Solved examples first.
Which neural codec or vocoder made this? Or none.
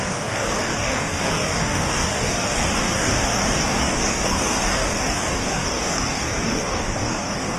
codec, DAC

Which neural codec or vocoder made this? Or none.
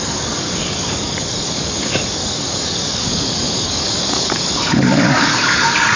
codec, DAC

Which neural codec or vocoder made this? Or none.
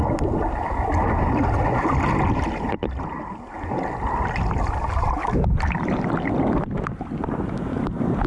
none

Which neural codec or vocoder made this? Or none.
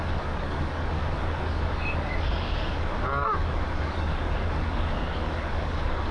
codec, DAC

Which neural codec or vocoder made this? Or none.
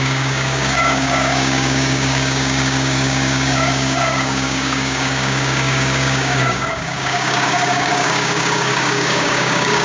codec, DAC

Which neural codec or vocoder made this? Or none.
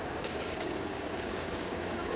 codec, DAC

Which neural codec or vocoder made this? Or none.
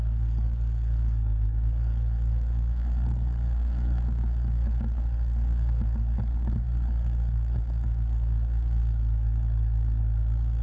codec, DAC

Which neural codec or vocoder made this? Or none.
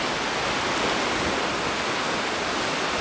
none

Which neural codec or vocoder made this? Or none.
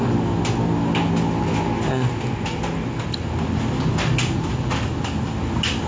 none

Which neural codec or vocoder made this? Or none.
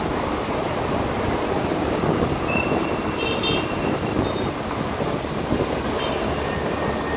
none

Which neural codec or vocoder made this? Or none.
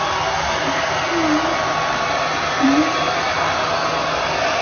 none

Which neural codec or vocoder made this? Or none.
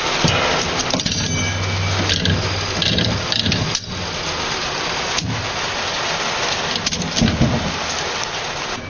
none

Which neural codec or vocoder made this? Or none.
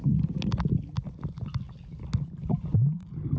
none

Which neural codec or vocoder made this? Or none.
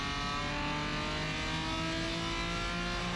none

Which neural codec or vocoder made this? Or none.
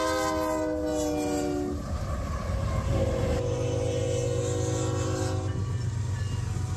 none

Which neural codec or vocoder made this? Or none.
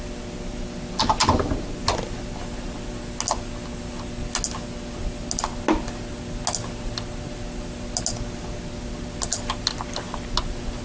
none